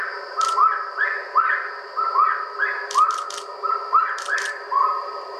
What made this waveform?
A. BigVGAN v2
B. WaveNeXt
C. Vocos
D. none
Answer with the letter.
D